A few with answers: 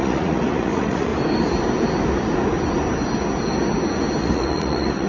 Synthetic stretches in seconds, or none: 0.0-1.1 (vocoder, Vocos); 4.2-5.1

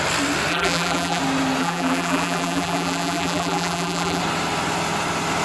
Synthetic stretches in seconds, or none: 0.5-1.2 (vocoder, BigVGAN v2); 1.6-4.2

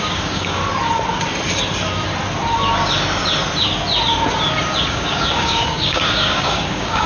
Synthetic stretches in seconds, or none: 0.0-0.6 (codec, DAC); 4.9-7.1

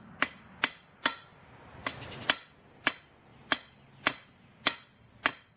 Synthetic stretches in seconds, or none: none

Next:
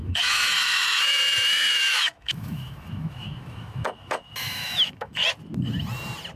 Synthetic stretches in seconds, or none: 0.0-5.2 (autoencoder, DAC-VAE)

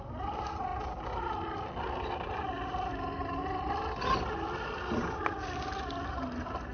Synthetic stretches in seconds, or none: none

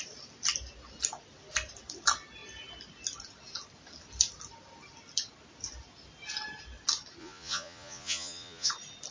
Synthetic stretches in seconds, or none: 7.2-8.7 (vocoder, Vocos)